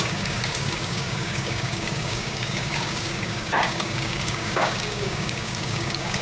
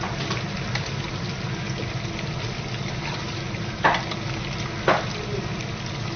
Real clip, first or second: second